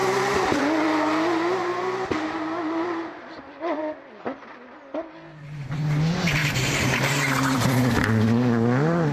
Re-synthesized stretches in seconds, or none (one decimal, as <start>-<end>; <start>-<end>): 0.0-0.6; 1.6-3.8; 6.4-7.8